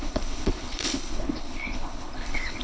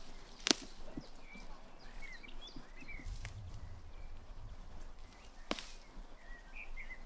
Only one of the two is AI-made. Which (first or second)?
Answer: first